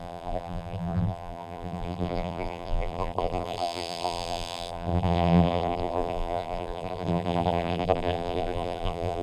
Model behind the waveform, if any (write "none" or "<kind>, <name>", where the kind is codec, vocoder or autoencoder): vocoder, BigVGAN v2